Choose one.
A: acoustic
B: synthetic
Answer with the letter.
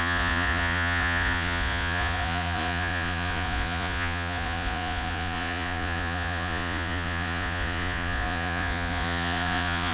B